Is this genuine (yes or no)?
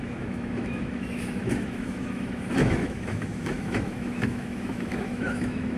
no